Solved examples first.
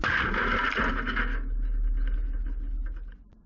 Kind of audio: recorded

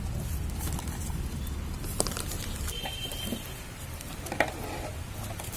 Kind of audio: recorded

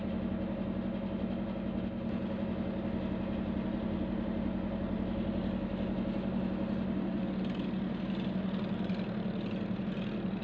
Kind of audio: recorded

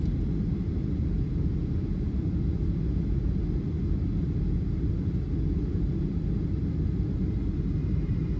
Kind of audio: recorded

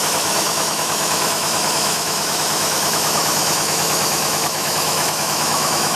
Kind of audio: remade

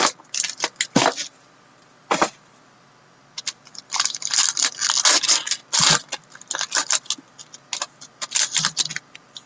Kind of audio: recorded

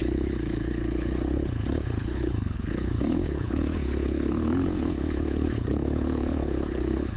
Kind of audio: remade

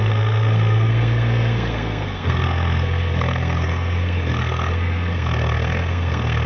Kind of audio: remade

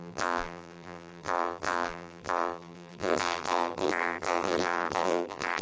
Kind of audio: remade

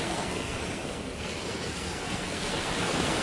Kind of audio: remade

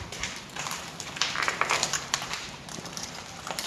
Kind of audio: remade